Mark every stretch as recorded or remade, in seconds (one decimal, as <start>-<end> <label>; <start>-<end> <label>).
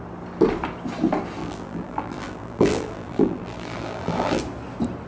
0.0-1.4 recorded; 1.4-4.4 remade; 4.4-5.1 recorded